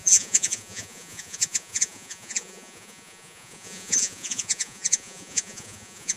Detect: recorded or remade remade